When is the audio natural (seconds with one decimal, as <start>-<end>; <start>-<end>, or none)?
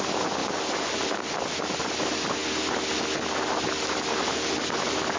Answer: 0.0-5.2